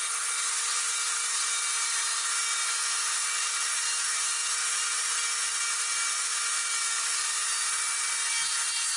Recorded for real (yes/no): yes